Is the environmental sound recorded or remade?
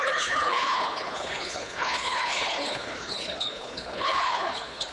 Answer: remade